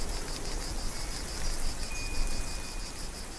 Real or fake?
real